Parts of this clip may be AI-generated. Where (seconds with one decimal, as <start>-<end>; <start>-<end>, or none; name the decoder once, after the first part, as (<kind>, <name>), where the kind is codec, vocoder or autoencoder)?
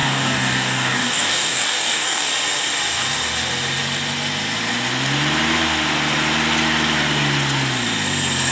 0.0-2.3 (codec, DAC)